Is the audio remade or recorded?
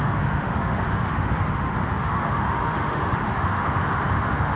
remade